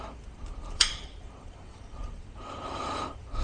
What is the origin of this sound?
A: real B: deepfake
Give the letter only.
B